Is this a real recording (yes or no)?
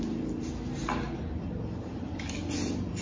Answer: yes